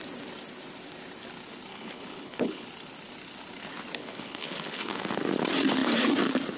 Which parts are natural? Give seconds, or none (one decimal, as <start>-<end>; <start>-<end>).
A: 0.0-1.7; 2.7-4.0; 5.0-6.6